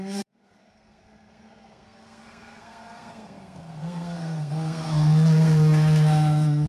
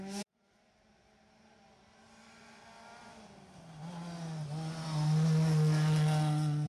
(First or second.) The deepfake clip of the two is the first